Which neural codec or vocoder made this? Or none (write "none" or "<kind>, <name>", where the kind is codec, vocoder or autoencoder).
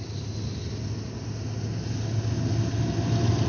none